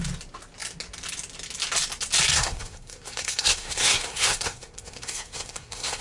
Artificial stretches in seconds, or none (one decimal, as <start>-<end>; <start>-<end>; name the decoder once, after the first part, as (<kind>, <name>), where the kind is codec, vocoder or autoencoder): 2.3-6.0 (codec, SNAC)